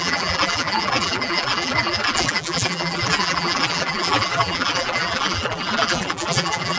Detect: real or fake fake